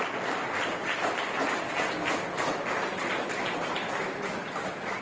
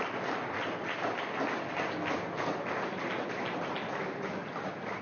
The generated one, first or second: first